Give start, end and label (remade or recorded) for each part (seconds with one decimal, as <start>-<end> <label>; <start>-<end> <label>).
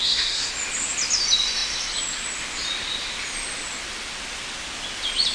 0.0-0.5 remade; 0.5-5.3 recorded